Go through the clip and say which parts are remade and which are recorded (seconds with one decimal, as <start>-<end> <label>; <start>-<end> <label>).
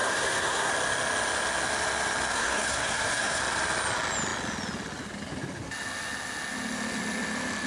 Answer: 0.0-0.7 remade; 0.7-2.3 recorded; 2.3-3.4 remade; 3.4-7.7 recorded